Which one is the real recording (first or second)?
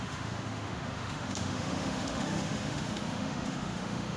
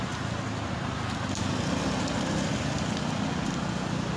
second